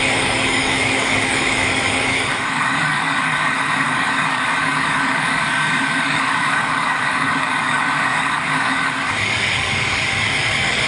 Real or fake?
fake